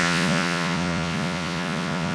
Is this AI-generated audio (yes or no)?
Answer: yes